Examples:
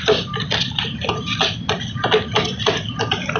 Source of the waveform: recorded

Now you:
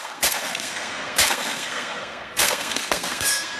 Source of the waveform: remade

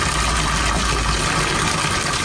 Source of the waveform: recorded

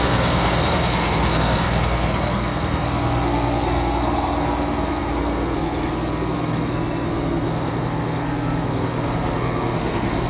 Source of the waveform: remade